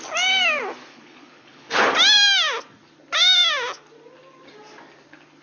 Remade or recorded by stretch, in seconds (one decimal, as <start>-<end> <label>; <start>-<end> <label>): 0.0-0.9 recorded; 0.9-1.9 remade; 1.9-5.4 recorded